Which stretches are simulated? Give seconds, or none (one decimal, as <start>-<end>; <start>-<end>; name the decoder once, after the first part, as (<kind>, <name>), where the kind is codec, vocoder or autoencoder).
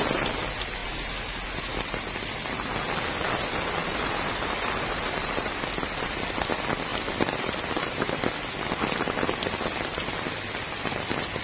3.8-5.5 (vocoder, BigVGAN v2)